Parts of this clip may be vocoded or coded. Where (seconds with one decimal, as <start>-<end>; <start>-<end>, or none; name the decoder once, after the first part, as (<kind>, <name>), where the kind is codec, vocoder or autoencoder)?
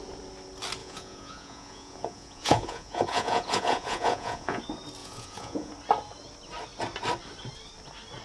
0.8-4.6 (vocoder, Vocos); 5.0-5.7